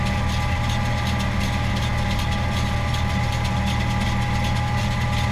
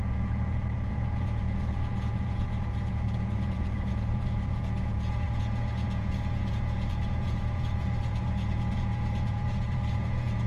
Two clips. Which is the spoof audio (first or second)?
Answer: second